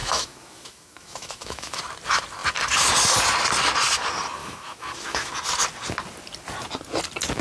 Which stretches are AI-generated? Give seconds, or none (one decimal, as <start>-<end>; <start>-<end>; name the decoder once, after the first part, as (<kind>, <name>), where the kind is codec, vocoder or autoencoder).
0.0-1.8 (autoencoder, DAC-VAE); 4.4-5.3